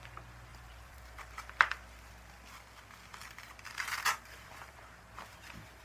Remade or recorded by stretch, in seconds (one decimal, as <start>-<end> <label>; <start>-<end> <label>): 0.0-0.5 recorded; 0.5-1.2 remade; 1.2-3.2 recorded; 3.2-5.8 remade